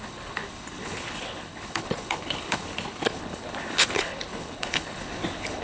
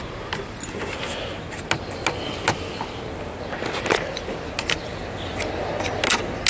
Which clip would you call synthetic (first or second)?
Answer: first